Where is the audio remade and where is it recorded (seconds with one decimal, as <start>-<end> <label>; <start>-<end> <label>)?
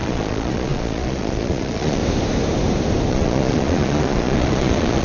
0.0-2.0 remade; 2.0-3.1 recorded; 3.1-5.0 remade